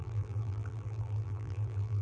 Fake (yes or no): yes